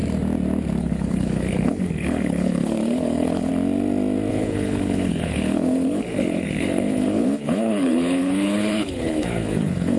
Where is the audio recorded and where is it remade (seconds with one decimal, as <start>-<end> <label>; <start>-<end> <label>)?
0.0-0.8 recorded; 0.8-3.5 remade; 3.5-4.3 recorded; 4.3-10.0 remade